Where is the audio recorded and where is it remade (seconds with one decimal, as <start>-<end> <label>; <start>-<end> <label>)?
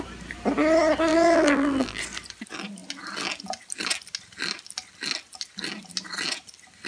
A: 0.0-1.1 recorded; 1.1-2.0 remade; 2.0-6.9 recorded